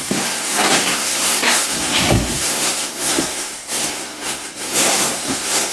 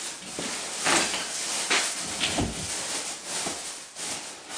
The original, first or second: second